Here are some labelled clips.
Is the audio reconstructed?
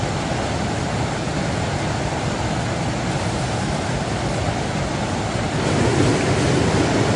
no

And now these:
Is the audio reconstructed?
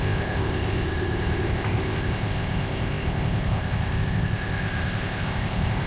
yes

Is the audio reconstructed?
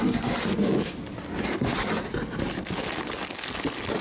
no